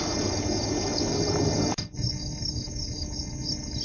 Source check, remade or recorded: recorded